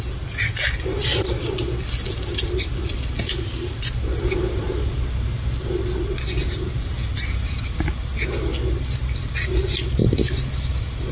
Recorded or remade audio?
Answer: recorded